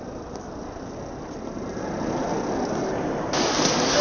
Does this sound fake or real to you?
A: real